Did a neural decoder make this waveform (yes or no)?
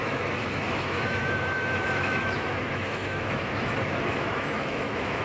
yes